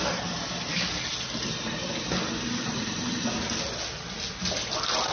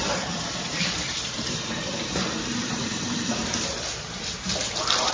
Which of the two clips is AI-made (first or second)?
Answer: second